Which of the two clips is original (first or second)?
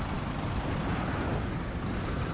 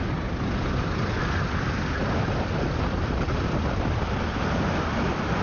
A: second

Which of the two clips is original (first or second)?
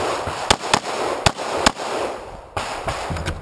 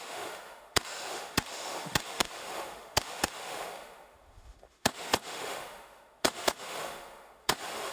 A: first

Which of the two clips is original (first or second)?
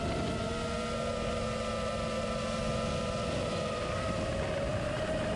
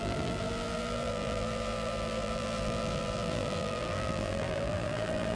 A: first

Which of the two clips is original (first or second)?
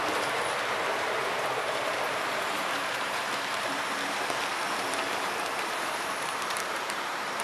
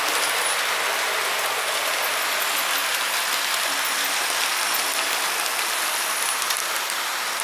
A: second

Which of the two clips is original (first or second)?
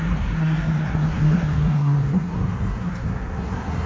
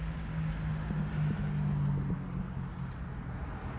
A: second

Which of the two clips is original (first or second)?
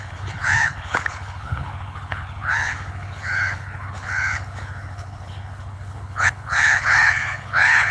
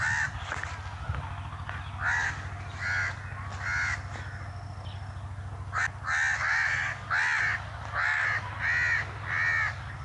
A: second